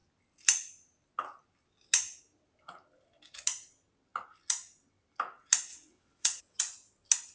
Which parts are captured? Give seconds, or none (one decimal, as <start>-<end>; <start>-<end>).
0.0-5.7; 6.6-7.3